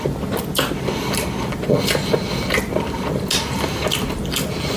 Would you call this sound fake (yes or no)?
no